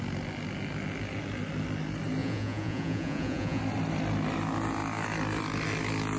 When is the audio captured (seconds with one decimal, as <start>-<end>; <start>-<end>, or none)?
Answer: 0.0-2.2; 3.6-6.2